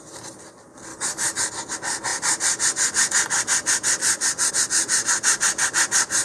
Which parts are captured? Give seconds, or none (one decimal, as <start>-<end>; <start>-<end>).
0.0-0.9; 1.5-6.2